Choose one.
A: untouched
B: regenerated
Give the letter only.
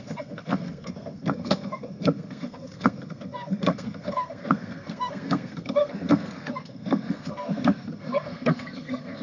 B